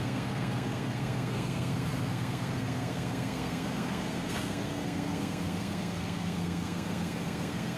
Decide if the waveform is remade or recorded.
remade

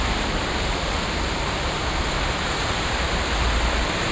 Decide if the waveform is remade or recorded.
remade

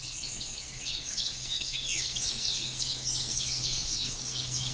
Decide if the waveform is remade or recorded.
remade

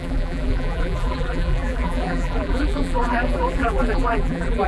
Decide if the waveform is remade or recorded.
remade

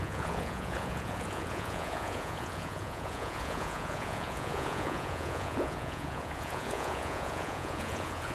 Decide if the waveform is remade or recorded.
remade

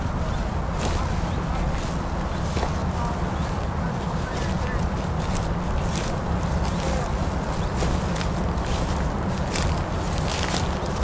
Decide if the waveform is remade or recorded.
recorded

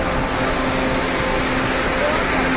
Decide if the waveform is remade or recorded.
recorded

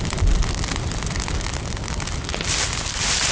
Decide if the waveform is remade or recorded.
recorded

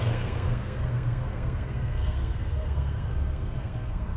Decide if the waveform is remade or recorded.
remade